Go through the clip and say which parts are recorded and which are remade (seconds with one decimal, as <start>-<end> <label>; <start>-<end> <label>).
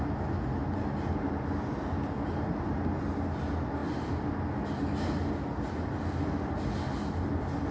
0.0-7.7 recorded